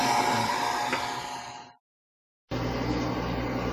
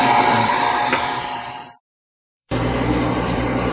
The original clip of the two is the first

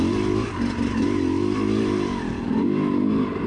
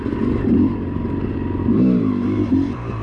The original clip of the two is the first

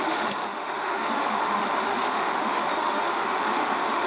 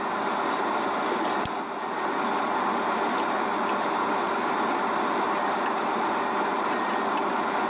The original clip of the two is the second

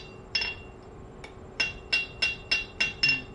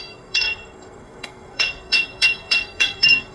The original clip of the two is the first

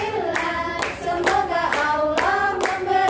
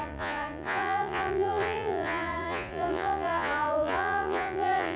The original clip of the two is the first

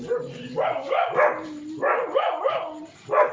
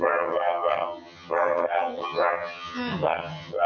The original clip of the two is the first